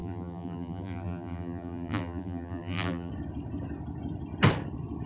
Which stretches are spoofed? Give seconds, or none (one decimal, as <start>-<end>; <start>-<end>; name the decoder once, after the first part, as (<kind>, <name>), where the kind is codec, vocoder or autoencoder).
0.0-3.1 (vocoder, BigVGAN v2)